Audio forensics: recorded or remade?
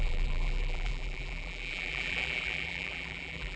remade